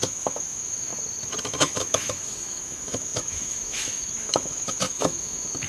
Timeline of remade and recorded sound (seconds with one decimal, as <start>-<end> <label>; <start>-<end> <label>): 0.0-0.9 remade; 0.9-1.4 recorded; 1.4-5.7 remade